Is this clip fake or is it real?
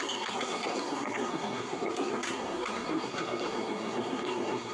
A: fake